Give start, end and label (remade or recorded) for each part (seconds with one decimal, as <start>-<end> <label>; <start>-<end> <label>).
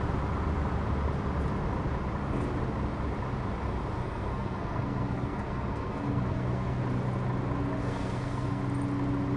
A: 0.0-4.0 recorded; 4.0-6.8 remade; 6.8-7.8 recorded; 7.8-8.6 remade; 8.6-9.4 recorded